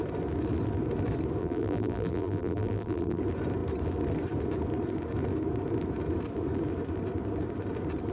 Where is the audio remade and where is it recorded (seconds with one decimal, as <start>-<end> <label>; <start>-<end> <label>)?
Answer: 0.0-1.4 recorded; 1.4-3.2 remade; 3.2-8.1 recorded